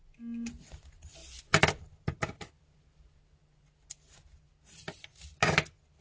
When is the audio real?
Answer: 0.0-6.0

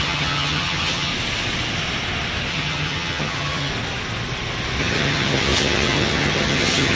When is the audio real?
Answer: 1.1-2.5; 3.7-4.8

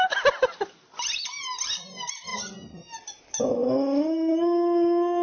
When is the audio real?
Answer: 0.0-5.2

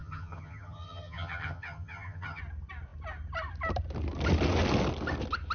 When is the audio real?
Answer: 2.4-5.5

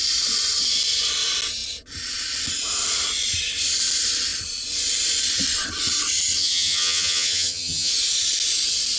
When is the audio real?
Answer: 0.0-6.4; 7.9-9.0

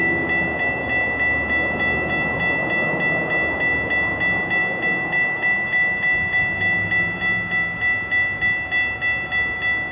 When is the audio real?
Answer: 0.0-9.9